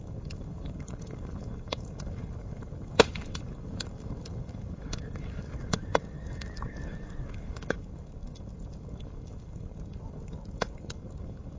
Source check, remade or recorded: remade